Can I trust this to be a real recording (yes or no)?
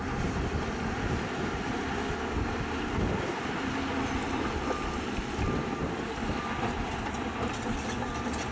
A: yes